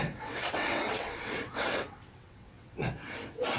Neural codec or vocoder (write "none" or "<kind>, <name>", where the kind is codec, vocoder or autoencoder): vocoder, WaveNeXt